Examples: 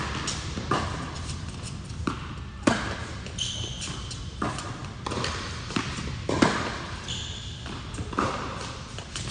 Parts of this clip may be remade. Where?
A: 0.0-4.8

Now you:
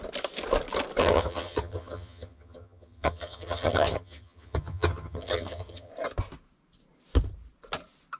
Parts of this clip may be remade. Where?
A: 1.0-5.9

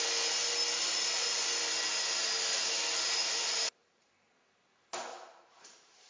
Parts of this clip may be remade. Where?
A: 3.2-4.1; 5.1-6.1

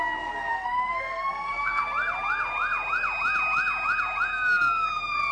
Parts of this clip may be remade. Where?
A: 0.5-1.8

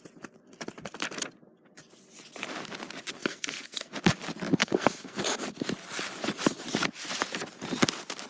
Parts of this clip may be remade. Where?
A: 3.2-3.9; 4.6-5.2

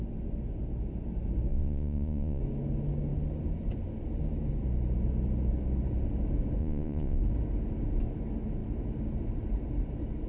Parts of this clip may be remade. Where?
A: 1.5-2.4; 6.6-7.2

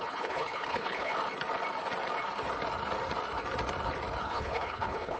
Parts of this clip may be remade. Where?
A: 0.0-1.1; 4.2-5.2